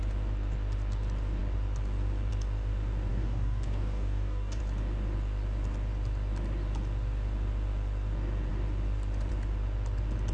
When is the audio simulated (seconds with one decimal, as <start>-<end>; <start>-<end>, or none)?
3.1-4.6